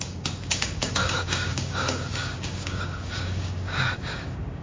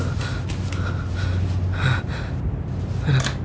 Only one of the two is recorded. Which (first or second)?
second